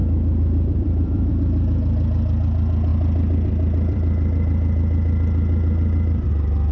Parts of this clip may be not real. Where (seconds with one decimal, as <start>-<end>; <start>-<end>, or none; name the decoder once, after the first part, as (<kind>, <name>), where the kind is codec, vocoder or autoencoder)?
0.0-1.3 (vocoder, BigVGAN v2); 2.9-6.3